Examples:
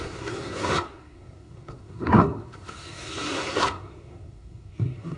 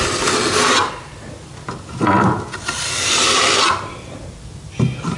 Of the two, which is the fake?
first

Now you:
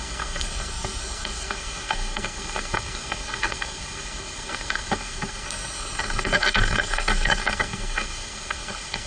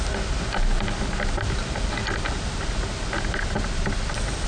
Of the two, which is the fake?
first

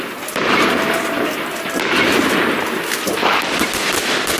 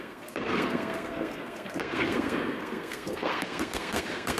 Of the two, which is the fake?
second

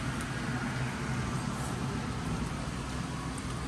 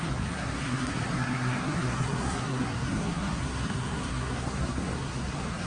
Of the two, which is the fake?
second